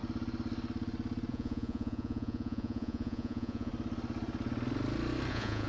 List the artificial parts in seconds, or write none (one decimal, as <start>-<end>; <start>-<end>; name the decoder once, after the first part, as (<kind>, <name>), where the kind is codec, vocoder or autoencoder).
1.3-3.7 (vocoder, Vocos); 5.3-5.7